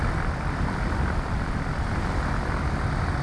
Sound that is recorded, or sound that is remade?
remade